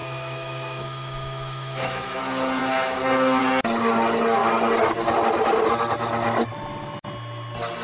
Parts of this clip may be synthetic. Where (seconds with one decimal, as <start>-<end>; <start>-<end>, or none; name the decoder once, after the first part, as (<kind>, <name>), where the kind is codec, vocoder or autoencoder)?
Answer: 0.0-2.2 (autoencoder, DAC-VAE); 2.6-3.4